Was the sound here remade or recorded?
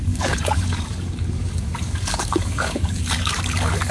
remade